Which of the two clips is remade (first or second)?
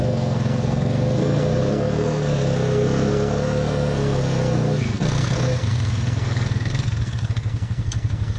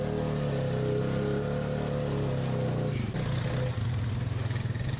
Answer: first